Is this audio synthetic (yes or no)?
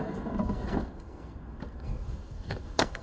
yes